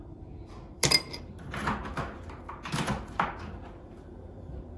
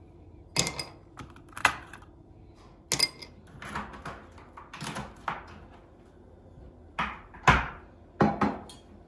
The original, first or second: second